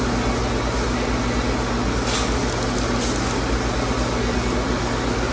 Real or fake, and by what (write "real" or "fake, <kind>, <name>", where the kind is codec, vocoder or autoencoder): real